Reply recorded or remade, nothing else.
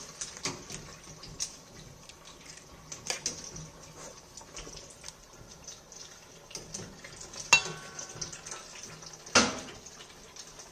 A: recorded